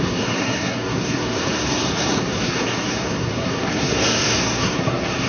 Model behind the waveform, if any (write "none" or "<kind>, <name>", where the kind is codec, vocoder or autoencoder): codec, SNAC